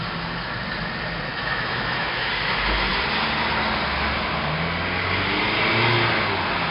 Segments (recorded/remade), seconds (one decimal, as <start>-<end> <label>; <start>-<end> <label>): 0.0-1.3 recorded; 1.3-2.3 remade; 2.3-6.7 recorded

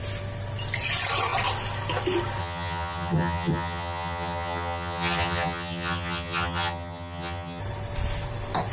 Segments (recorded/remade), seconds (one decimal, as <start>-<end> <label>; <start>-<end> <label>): 0.0-2.4 recorded; 2.4-7.6 remade; 7.6-8.7 recorded

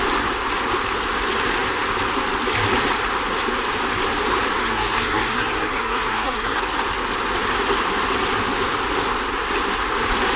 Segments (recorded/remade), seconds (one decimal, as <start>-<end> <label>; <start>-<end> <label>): 0.0-4.6 recorded; 4.6-6.6 remade; 6.6-10.4 recorded

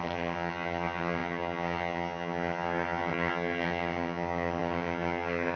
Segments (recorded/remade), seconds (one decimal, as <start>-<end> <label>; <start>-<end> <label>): 0.0-5.6 remade

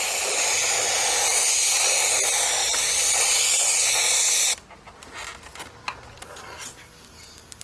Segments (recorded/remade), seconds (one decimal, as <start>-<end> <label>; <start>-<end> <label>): 0.0-2.6 recorded; 2.6-4.2 remade; 4.2-7.6 recorded

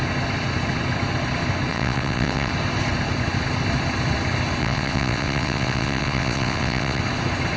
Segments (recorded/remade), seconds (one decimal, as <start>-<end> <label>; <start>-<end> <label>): 0.0-1.7 recorded; 1.7-2.5 remade; 2.5-4.6 recorded; 4.6-7.0 remade; 7.0-7.6 recorded

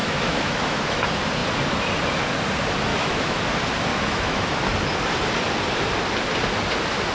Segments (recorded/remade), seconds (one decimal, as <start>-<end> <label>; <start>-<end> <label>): 0.0-1.0 remade; 1.0-2.9 recorded; 2.9-3.4 remade; 3.4-3.9 recorded; 3.9-4.4 remade; 4.4-7.1 recorded

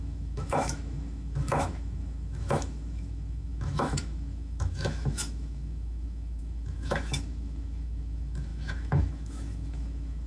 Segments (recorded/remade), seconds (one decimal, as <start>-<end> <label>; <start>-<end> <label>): 0.0-10.3 remade